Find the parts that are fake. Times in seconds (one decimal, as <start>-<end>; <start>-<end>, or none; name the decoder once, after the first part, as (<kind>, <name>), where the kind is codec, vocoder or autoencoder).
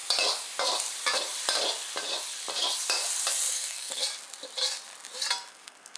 3.5-4.0 (codec, SNAC); 5.5-6.0